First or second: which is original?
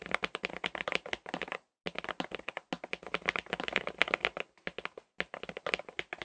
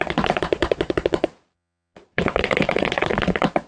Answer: first